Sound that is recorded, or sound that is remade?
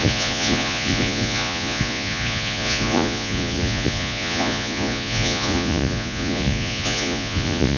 remade